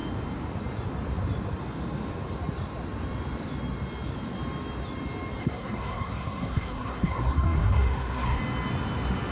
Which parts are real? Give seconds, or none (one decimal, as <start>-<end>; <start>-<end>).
0.0-5.4; 8.4-9.3